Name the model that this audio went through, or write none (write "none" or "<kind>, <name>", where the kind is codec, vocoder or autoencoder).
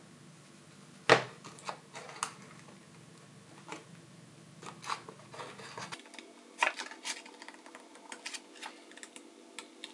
none